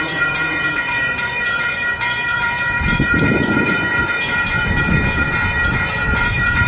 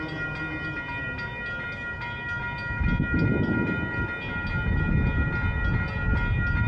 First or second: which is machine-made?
first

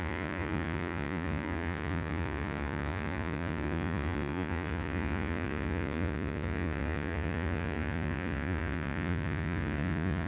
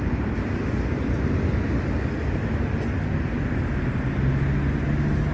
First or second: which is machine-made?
first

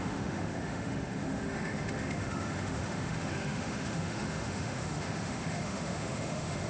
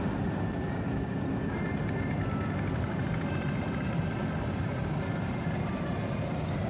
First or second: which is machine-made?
first